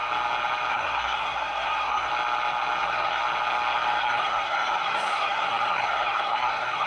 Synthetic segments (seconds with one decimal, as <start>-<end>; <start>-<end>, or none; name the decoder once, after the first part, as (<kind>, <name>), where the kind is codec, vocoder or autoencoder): 0.7-2.1 (codec, SNAC); 2.8-3.2; 4.0-6.9